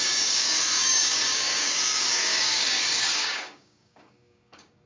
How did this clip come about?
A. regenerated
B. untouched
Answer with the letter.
A